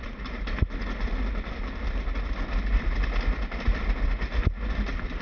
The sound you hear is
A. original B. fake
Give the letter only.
A